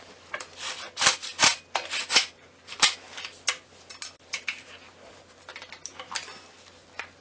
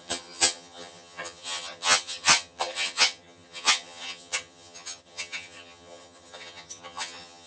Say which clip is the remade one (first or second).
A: second